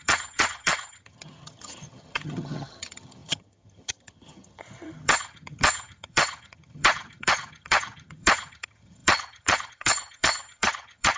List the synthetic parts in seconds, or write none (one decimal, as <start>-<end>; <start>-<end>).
0.0-11.2